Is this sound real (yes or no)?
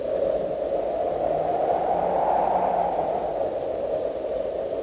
yes